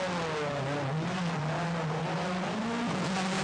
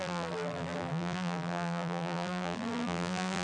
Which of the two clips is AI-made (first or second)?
second